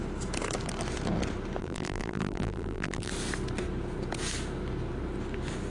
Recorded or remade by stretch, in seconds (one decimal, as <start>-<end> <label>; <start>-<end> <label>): 0.0-1.6 recorded; 1.6-3.1 remade; 3.1-5.7 recorded